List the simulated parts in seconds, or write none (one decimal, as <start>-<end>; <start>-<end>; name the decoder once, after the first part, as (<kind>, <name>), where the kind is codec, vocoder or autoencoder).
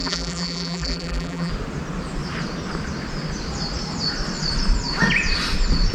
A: 0.0-1.5 (vocoder, BigVGAN v2)